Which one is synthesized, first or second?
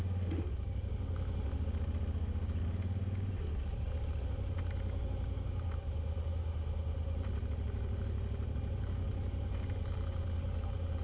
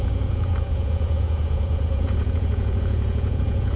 second